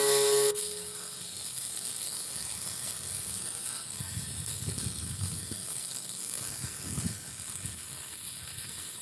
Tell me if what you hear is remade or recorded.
remade